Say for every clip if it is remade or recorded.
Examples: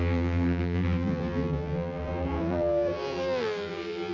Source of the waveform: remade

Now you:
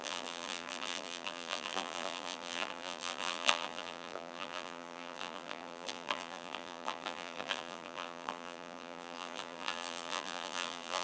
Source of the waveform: remade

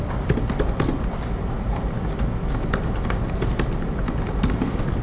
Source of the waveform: recorded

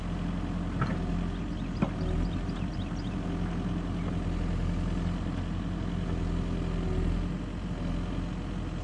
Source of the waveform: recorded